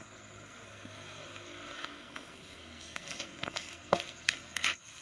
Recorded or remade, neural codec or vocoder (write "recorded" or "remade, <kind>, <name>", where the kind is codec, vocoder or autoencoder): remade, codec, SNAC